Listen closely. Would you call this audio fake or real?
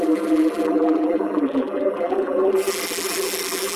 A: fake